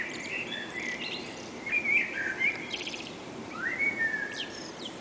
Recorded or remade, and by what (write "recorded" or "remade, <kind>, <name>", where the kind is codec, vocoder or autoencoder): remade, vocoder, BigVGAN v2